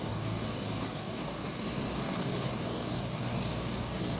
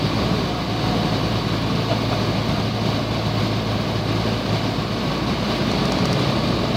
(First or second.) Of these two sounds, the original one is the second